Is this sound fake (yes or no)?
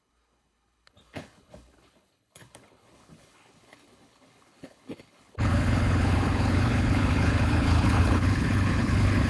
yes